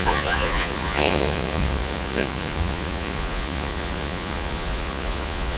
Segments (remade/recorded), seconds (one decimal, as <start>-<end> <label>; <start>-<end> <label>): 0.0-5.6 remade